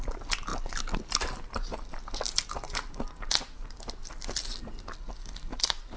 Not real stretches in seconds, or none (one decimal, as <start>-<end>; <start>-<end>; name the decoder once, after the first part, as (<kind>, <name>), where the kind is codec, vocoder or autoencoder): none